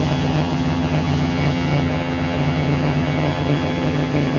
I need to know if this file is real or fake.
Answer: fake